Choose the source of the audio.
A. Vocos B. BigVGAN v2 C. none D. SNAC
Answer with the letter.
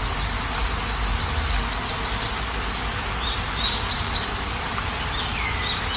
C